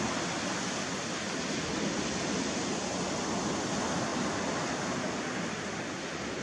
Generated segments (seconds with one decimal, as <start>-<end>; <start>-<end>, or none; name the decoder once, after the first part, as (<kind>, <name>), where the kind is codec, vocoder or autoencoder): none

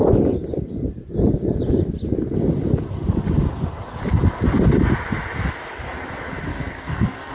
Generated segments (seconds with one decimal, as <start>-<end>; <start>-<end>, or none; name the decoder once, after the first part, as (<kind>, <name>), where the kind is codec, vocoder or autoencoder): 6.5-7.3 (codec, SNAC)

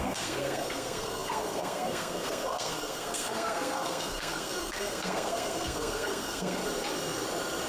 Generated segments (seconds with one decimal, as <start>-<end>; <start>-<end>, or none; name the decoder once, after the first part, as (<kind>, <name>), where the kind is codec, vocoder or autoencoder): 0.0-6.6 (codec, SNAC)

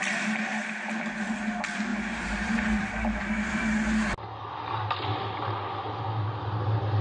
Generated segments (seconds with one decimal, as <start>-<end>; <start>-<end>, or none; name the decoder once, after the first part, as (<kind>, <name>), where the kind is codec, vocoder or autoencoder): 1.9-3.3 (vocoder, BigVGAN v2)

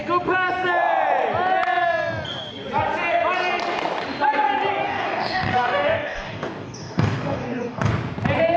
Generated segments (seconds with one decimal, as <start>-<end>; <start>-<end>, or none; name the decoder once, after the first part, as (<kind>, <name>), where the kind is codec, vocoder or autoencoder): 4.8-7.9 (codec, DAC)

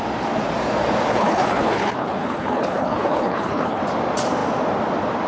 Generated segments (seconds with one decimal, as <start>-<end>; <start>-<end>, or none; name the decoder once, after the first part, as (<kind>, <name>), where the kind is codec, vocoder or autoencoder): 1.1-3.8 (codec, HILCodec)